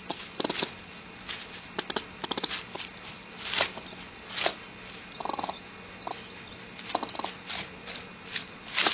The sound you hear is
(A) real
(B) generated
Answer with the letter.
A